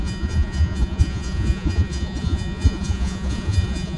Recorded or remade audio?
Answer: remade